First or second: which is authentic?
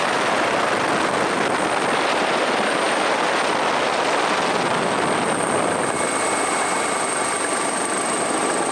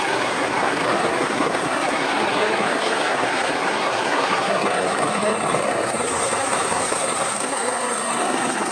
first